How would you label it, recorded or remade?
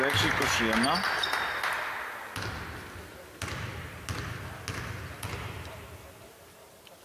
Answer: recorded